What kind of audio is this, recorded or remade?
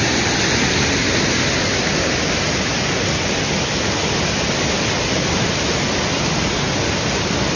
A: recorded